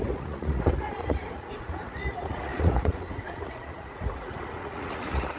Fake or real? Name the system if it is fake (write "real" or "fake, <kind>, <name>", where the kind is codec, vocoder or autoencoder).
fake, vocoder, Vocos